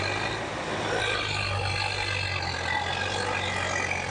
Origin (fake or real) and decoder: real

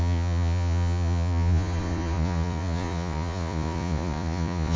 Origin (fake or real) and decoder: fake, vocoder, Vocos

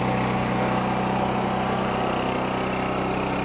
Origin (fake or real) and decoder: real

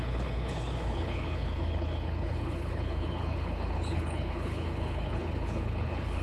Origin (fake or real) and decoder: fake, codec, HILCodec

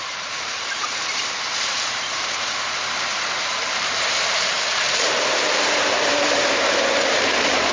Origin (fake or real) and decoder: fake, vocoder, BigVGAN v2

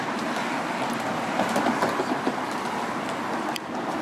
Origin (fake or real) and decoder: real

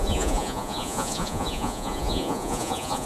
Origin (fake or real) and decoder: fake, vocoder, Vocos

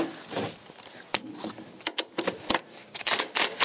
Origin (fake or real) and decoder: real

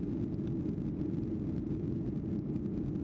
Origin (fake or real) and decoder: real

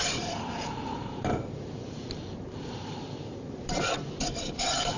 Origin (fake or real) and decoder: fake, vocoder, BigVGAN v2